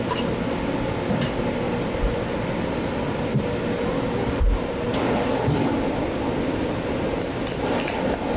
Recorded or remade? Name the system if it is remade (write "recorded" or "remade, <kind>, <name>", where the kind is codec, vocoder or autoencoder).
recorded